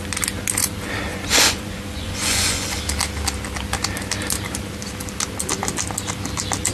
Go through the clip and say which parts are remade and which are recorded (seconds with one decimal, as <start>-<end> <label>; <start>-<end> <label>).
0.0-1.1 recorded; 1.1-2.8 remade; 2.8-6.7 recorded